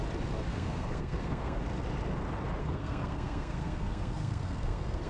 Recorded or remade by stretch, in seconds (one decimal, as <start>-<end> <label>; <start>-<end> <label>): 0.0-0.5 recorded; 0.5-1.6 remade; 1.6-2.6 recorded; 2.6-5.1 remade